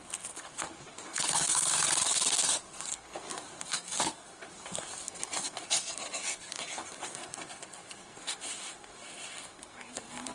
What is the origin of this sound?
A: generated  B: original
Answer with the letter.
A